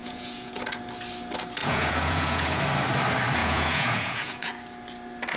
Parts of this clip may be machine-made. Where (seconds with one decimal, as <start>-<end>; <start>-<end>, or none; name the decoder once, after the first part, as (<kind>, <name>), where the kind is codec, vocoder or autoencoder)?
0.0-0.6 (vocoder, Vocos); 1.6-2.6; 3.4-4.5